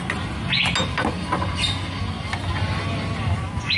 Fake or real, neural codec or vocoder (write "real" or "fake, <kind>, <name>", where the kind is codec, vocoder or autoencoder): real